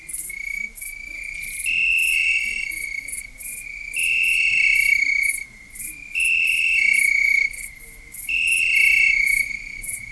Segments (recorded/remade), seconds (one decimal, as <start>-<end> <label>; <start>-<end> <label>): 0.0-10.1 recorded